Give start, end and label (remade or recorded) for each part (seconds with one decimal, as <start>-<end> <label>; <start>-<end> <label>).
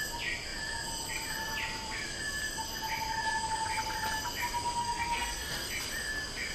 0.0-4.8 recorded; 4.8-5.7 remade; 5.7-6.5 recorded